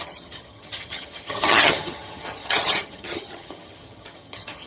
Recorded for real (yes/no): no